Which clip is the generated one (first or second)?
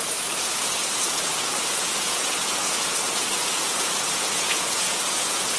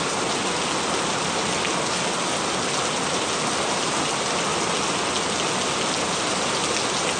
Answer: first